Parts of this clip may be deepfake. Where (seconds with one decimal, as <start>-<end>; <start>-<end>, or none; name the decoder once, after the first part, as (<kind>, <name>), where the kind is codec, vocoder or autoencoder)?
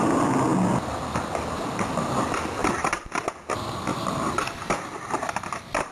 0.0-0.5 (vocoder, BigVGAN v2); 1.5-2.6; 3.3-5.9